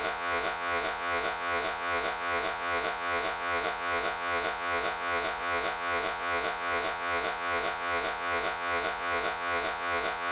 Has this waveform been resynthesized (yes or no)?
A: yes